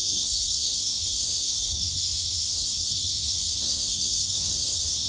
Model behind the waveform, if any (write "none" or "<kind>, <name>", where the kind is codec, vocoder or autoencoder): codec, SNAC